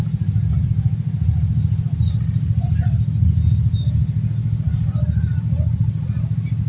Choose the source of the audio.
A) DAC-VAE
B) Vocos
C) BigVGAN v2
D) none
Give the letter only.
D